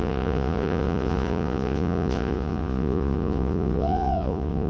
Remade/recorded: remade